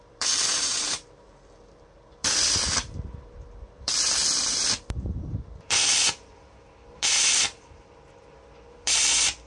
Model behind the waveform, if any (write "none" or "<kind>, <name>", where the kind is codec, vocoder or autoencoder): vocoder, BigVGAN v2